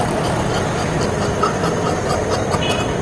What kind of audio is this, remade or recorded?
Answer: recorded